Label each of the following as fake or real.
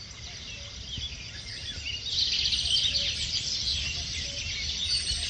real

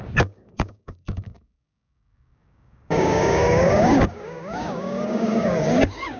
fake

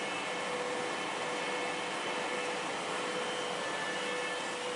real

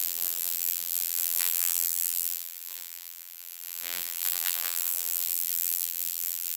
fake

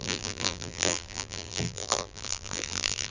fake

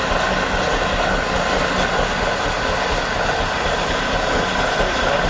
real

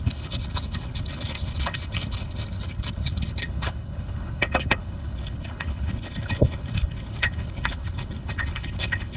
fake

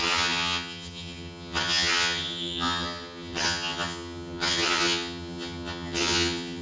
fake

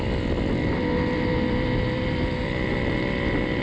real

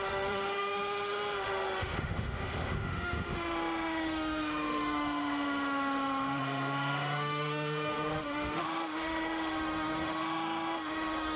fake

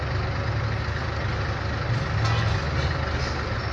real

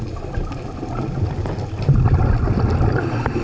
real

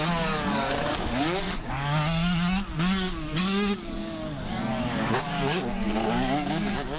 fake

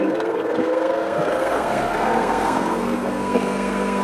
fake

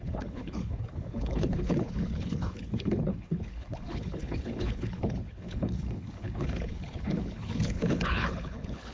fake